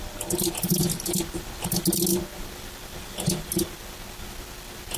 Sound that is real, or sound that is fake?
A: real